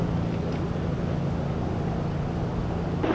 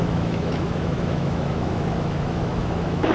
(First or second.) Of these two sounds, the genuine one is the first